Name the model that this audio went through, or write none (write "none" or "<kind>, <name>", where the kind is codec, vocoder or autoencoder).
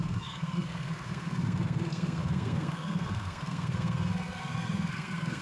codec, SNAC